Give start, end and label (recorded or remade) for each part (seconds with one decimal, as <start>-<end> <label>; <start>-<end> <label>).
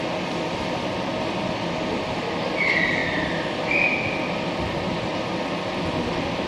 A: 0.0-6.5 recorded